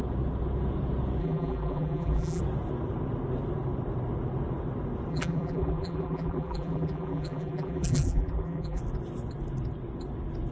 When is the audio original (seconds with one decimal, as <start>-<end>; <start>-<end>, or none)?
0.0-1.2; 2.4-5.1; 8.8-10.5